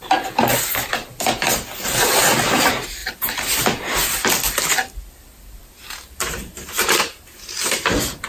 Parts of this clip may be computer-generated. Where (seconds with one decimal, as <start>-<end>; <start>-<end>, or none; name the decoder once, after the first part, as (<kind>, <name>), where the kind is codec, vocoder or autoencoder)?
5.6-7.5 (vocoder, BigVGAN v2)